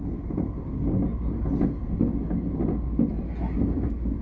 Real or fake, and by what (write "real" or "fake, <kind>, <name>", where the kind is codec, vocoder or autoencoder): real